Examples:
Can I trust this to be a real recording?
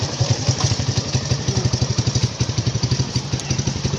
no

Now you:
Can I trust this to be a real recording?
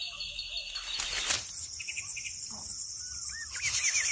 yes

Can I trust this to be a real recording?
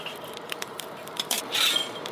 no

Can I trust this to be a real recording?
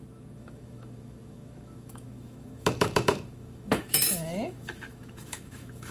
no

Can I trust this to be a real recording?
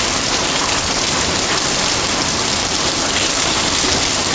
yes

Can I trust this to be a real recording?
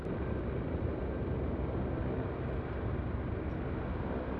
yes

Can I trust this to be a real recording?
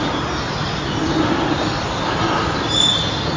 yes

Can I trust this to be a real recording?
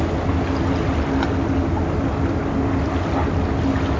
yes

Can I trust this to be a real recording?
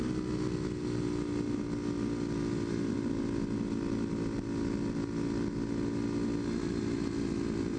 yes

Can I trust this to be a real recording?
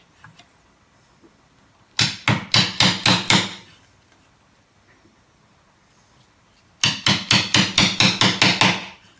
yes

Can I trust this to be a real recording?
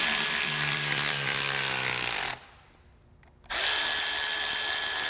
yes